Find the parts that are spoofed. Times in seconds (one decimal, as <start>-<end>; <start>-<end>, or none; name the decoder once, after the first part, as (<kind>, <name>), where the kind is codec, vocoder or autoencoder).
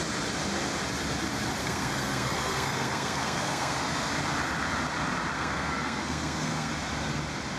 1.6-4.1 (codec, SNAC); 5.3-6.7